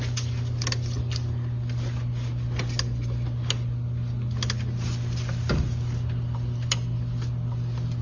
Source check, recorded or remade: recorded